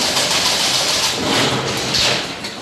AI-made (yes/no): no